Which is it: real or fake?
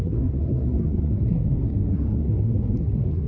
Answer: fake